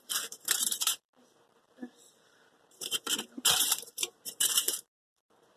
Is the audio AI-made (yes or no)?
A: yes